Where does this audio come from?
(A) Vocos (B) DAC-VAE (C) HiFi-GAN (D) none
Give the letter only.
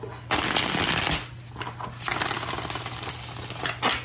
D